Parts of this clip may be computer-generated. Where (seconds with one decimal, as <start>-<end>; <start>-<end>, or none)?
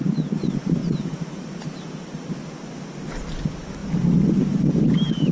0.8-2.3; 3.8-4.6